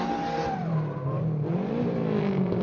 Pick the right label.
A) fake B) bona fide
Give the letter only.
B